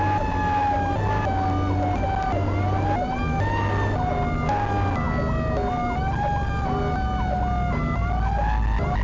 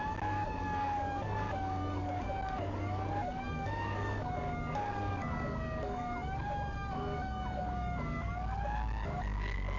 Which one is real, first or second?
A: first